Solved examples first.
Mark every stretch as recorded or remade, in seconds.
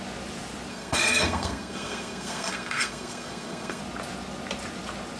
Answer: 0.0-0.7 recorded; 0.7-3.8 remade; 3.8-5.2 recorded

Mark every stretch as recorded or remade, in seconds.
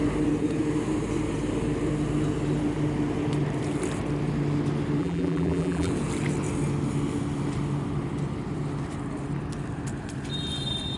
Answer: 0.0-5.0 recorded; 5.0-5.9 remade; 5.9-11.0 recorded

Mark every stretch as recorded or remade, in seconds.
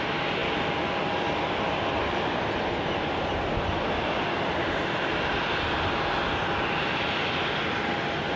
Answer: 0.0-8.4 recorded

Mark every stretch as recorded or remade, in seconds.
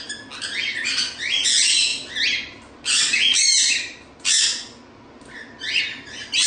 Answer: 0.0-6.5 recorded